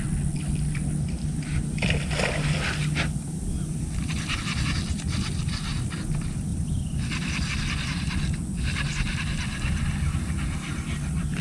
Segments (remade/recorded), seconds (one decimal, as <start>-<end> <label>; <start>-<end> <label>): 0.0-11.4 recorded